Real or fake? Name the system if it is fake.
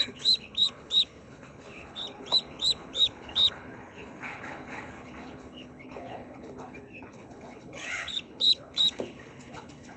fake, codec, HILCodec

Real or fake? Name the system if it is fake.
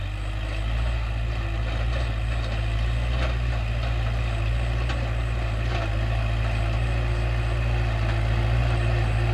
real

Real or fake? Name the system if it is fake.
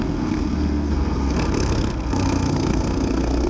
fake, codec, SNAC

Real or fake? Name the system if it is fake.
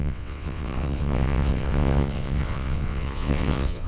fake, vocoder, WaveNeXt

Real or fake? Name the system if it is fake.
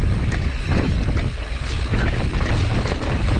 real